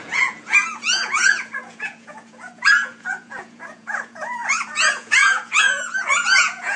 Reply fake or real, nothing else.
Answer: fake